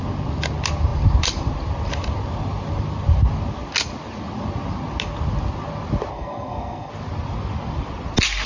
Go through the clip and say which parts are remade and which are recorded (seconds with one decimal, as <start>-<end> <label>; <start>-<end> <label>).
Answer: 0.0-6.1 recorded; 6.1-6.9 remade; 6.9-8.5 recorded